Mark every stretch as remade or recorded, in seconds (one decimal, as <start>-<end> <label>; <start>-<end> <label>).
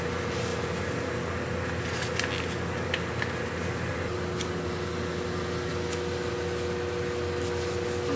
0.0-8.2 recorded